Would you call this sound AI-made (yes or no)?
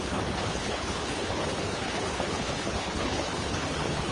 yes